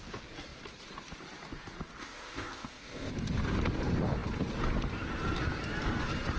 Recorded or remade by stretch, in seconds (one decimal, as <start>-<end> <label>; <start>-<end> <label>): 0.0-2.0 recorded; 2.0-3.1 remade; 3.1-6.4 recorded